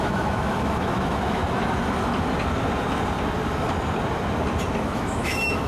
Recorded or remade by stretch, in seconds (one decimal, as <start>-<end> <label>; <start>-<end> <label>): 0.0-1.4 remade; 1.4-4.8 recorded; 4.8-5.7 remade